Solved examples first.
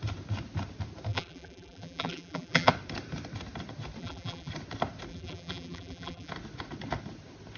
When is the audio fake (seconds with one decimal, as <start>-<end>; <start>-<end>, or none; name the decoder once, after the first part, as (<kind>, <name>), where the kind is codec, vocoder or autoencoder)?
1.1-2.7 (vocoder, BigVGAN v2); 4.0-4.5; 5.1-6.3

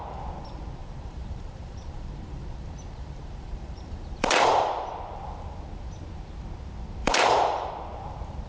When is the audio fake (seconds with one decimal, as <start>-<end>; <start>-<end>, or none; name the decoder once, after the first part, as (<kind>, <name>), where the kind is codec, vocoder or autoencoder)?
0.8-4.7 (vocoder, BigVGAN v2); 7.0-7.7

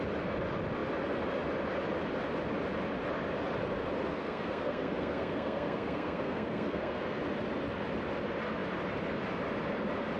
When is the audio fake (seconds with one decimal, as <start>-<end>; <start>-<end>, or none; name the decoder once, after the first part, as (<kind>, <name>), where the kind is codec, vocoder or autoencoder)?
4.1-7.2 (codec, SNAC)

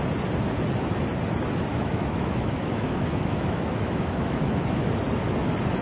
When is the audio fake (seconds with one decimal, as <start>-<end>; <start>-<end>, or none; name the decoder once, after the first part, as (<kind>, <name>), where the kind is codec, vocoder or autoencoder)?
1.7-4.9 (autoencoder, DAC-VAE)

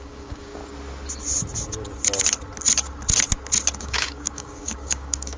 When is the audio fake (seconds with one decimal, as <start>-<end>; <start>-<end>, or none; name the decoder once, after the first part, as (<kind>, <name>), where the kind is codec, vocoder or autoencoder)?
0.0-0.6 (codec, DAC); 3.8-5.4

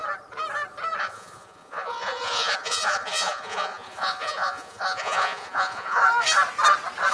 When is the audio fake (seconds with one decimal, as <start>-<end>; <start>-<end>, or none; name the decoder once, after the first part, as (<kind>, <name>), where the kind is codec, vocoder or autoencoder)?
1.0-6.0 (vocoder, Vocos)